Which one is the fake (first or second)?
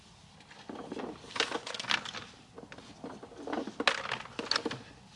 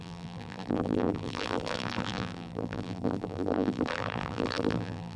second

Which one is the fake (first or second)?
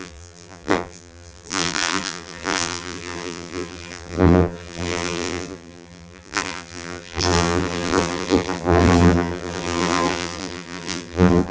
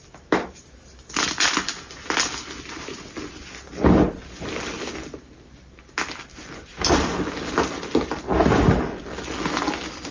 first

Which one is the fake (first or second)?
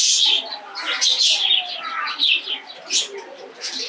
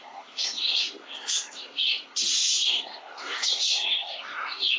second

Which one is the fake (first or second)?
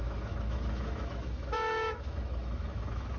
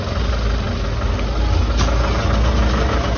first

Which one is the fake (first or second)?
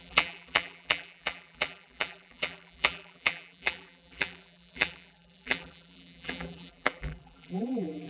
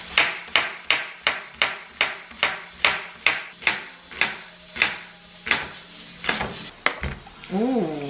first